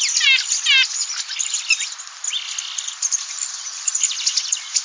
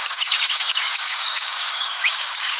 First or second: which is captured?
first